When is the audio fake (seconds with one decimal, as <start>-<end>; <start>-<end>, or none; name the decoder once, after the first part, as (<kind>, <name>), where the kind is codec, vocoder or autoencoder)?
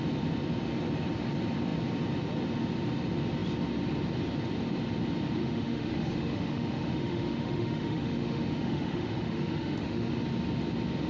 5.4-10.1 (autoencoder, DAC-VAE)